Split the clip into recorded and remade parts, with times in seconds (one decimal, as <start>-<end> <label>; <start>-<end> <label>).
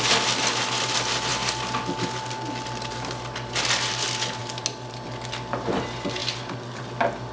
0.0-7.3 recorded